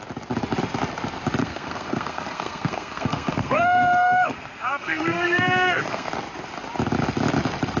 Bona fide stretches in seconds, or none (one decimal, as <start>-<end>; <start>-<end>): 0.0-1.4; 6.1-7.8